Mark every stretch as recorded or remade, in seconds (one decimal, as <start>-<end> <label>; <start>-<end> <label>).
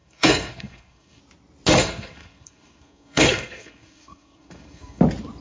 0.0-1.2 remade; 1.2-1.8 recorded; 1.8-5.0 remade; 5.0-5.4 recorded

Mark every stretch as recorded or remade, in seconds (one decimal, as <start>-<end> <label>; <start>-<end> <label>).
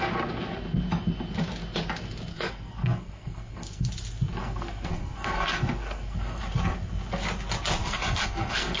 0.0-2.3 recorded; 2.3-3.9 remade; 3.9-4.4 recorded; 4.4-6.4 remade; 6.4-7.8 recorded; 7.8-8.8 remade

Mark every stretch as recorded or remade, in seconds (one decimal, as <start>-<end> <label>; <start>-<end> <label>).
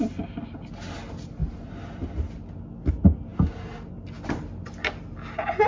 0.0-5.7 recorded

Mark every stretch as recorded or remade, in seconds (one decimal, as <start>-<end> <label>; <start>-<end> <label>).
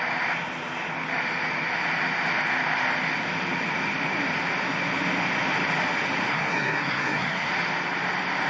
0.0-6.3 recorded; 6.3-7.5 remade; 7.5-8.5 recorded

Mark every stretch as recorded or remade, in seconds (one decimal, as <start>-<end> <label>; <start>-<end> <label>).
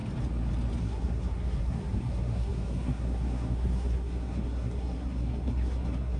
0.0-0.8 recorded; 0.8-6.2 remade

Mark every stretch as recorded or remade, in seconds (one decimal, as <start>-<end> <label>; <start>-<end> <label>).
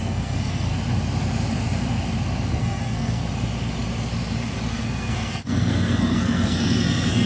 0.0-0.7 remade; 0.7-2.6 recorded; 2.6-3.2 remade; 3.2-4.7 recorded; 4.7-7.3 remade